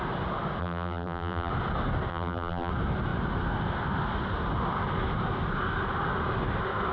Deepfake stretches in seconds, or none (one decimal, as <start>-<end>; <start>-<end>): 0.6-1.5; 2.1-2.7